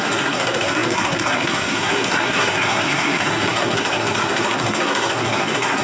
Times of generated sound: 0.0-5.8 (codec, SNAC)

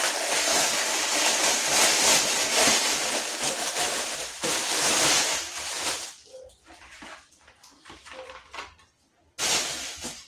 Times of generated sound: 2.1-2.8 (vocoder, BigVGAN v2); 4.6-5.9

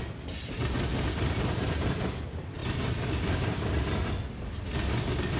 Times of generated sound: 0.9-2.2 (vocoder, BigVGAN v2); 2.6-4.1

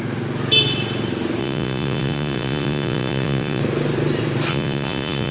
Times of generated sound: 1.4-3.6 (vocoder, Vocos); 4.5-5.3

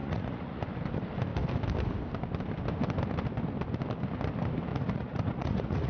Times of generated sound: 0.0-0.6 (vocoder, Vocos); 4.7-5.9

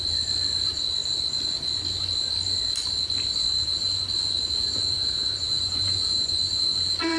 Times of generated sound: 3.5-7.2 (vocoder, Vocos)

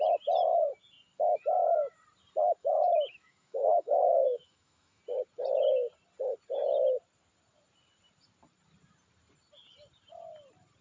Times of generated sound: 2.6-5.0 (autoencoder, DAC-VAE)

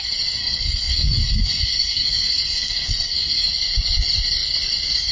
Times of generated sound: 0.4-3.5 (codec, SNAC)